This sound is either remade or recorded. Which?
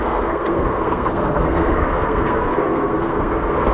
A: remade